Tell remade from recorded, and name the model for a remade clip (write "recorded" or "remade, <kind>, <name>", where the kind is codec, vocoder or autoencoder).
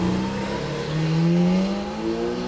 recorded